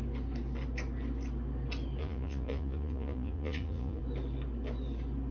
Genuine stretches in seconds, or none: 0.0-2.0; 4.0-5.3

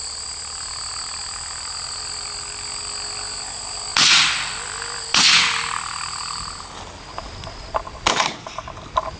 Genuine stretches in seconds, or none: 0.0-9.2

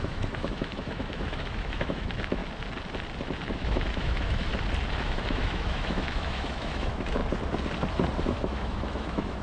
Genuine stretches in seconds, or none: 2.4-3.5; 4.5-5.0; 7.2-8.2

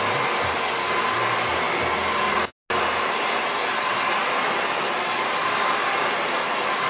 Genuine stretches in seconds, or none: 0.0-6.9

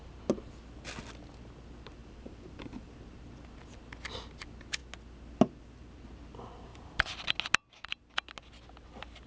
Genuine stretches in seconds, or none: 0.0-2.0; 2.9-6.7; 7.2-9.3